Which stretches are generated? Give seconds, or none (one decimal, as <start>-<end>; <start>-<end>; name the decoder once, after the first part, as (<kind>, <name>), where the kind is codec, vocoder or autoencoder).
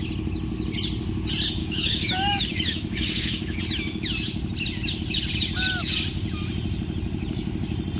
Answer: 1.6-3.6 (autoencoder, DAC-VAE)